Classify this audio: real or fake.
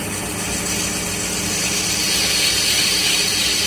real